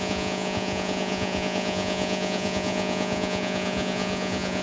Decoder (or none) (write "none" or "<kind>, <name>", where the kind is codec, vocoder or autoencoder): vocoder, Vocos